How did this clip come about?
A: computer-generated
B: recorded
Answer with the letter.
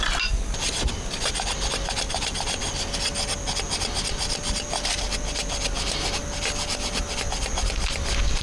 B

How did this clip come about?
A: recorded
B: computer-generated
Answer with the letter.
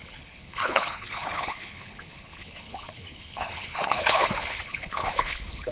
B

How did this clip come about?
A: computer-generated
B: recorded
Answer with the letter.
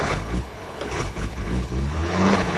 A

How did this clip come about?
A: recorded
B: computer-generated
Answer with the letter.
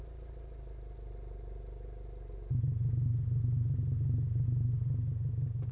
A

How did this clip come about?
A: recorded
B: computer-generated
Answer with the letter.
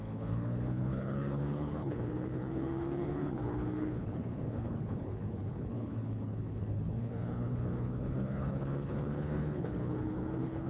B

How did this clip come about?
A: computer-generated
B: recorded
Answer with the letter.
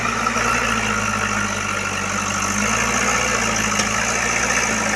B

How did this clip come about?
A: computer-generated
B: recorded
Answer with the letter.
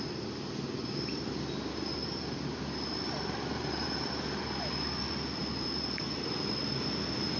B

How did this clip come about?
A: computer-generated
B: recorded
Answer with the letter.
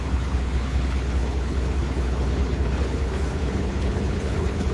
A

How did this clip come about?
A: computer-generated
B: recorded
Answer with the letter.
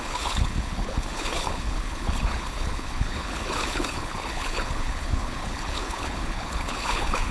A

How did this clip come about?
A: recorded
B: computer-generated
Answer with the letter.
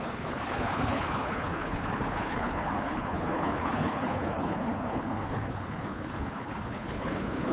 B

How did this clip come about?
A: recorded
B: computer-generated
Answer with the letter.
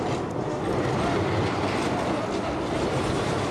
A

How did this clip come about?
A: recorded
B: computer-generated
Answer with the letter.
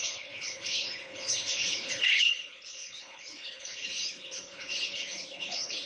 B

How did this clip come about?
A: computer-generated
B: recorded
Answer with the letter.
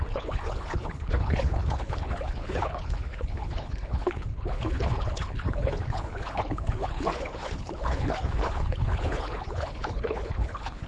A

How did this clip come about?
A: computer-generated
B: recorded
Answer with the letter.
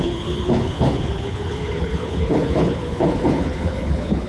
A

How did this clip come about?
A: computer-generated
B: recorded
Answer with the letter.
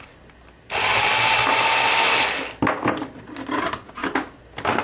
B